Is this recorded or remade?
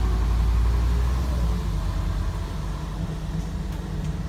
recorded